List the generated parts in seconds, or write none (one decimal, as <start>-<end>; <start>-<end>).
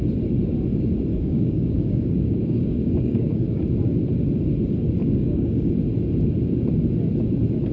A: 1.1-3.6; 5.0-5.7